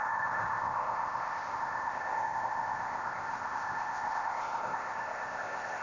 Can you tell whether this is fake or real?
fake